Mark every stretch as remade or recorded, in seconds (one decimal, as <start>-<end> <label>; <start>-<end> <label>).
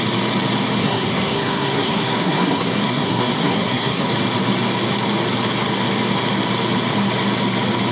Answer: 0.0-0.8 recorded; 0.8-4.1 remade; 4.1-7.9 recorded